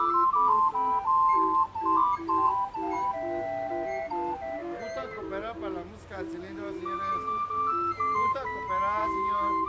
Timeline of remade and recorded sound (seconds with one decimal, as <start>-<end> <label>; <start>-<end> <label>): 0.0-9.0 recorded; 9.0-9.7 remade